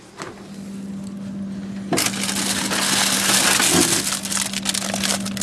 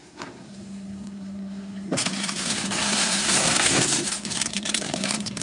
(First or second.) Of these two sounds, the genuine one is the first